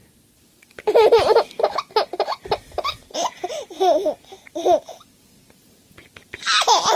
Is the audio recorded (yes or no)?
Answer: yes